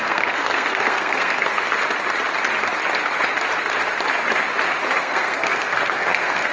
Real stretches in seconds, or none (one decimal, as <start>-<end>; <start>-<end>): 1.8-5.0